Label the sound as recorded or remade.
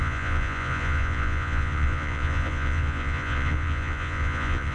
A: remade